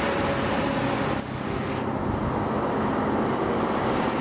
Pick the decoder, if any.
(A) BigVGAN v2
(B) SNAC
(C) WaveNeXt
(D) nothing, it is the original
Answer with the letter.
D